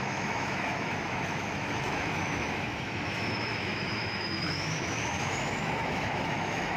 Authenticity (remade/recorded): remade